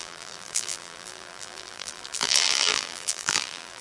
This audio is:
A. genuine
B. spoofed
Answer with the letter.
B